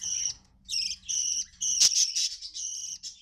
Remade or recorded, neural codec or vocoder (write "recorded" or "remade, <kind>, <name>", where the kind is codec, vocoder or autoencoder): recorded